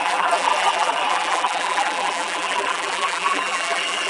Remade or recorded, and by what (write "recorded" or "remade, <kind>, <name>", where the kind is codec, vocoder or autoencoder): remade, vocoder, BigVGAN v2